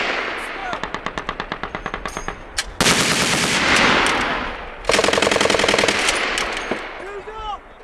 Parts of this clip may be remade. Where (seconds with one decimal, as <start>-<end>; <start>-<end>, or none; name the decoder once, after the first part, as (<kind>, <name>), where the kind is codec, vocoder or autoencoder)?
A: none